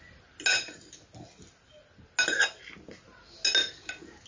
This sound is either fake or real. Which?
real